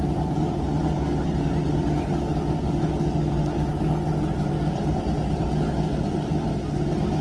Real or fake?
real